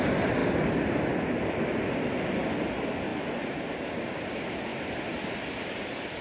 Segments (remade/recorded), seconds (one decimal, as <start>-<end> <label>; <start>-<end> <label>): 0.0-6.2 recorded